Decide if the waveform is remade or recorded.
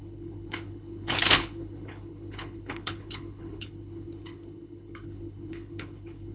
remade